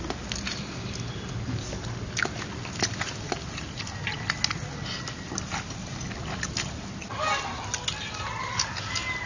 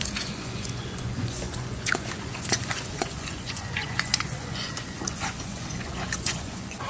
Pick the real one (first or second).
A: first